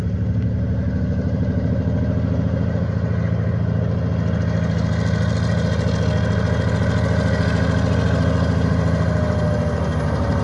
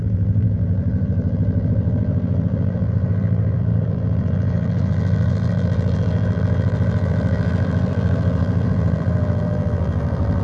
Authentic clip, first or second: first